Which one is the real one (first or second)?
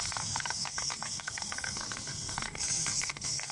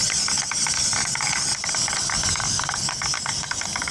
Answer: second